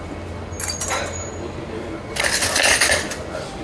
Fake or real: real